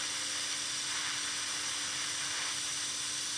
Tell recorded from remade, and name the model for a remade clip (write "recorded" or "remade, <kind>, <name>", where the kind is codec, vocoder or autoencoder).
recorded